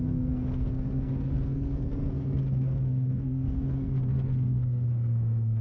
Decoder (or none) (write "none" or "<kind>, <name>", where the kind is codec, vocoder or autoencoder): codec, SNAC